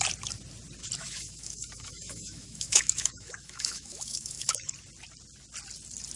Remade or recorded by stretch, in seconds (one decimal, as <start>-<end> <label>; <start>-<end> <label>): 0.0-1.0 recorded; 1.0-4.7 remade; 4.7-6.2 recorded